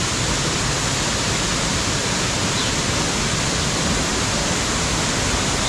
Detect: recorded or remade recorded